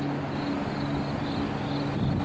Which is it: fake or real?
real